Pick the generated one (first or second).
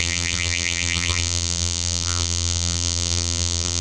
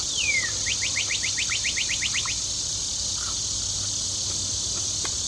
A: first